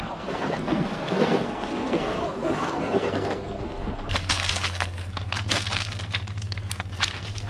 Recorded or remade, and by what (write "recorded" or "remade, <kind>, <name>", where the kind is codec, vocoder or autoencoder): remade, codec, SNAC